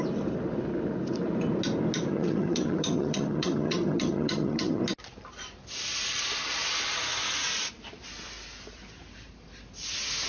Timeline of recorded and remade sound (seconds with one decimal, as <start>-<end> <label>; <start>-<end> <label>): 0.0-2.1 recorded; 2.1-4.8 remade; 4.8-10.3 recorded